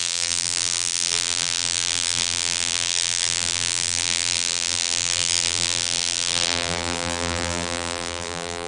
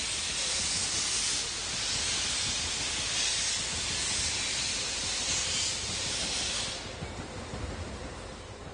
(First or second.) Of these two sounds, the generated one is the first